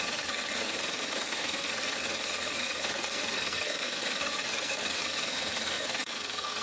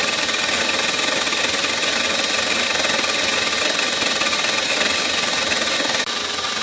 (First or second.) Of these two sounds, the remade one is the first